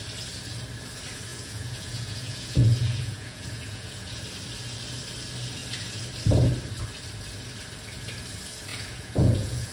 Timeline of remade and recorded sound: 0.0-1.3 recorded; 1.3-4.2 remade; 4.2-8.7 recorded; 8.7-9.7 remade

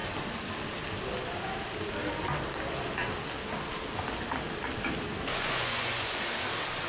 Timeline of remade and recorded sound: 0.0-5.3 recorded; 5.3-6.2 remade; 6.2-6.9 recorded